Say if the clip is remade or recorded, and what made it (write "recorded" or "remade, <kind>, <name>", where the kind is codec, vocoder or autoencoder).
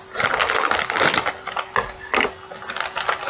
recorded